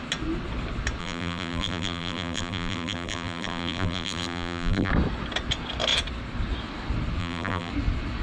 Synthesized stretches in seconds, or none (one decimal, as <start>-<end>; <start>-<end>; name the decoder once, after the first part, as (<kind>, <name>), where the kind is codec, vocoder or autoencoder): 1.0-4.9 (vocoder, BigVGAN v2); 7.2-7.7